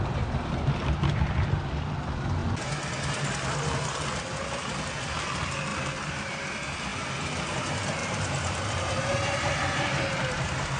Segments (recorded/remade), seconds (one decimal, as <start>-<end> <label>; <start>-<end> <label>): 0.0-5.7 recorded; 5.7-6.3 remade; 6.3-8.0 recorded; 8.0-10.8 remade